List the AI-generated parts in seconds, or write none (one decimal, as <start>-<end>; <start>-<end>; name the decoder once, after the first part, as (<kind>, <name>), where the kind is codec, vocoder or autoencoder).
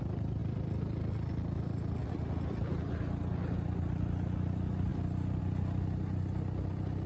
none